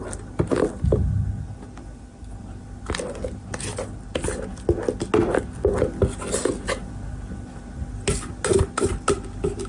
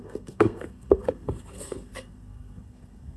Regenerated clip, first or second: second